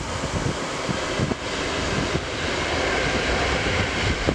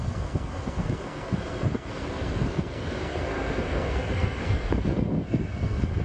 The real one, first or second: first